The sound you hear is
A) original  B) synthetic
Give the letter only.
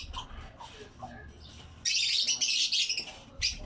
A